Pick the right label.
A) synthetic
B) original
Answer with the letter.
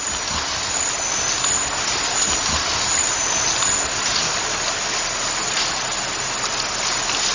B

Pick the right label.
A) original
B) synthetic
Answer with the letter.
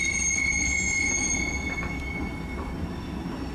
A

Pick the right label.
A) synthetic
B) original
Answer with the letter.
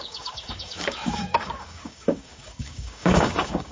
A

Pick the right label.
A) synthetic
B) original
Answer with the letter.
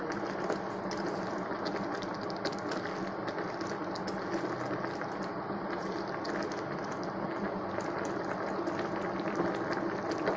B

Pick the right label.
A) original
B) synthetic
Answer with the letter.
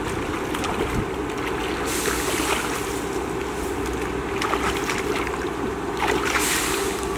A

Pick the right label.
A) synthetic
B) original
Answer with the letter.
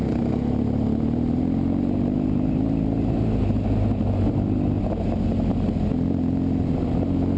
B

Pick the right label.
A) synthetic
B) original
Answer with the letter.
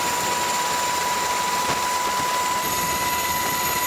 B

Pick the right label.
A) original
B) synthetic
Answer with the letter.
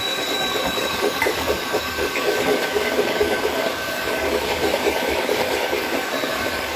B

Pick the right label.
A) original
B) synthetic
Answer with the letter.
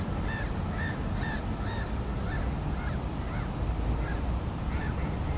A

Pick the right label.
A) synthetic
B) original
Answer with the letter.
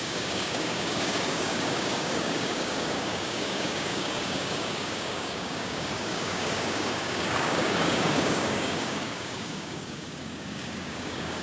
A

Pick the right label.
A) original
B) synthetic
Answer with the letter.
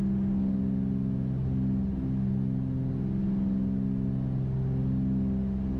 A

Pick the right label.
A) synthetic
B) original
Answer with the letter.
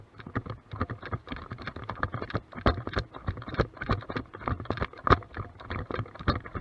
B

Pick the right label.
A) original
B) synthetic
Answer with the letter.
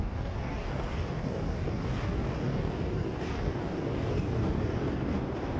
B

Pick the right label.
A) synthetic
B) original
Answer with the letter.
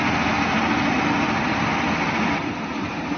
B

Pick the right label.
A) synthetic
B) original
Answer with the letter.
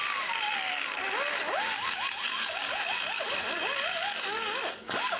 A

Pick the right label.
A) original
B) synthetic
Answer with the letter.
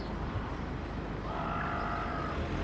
A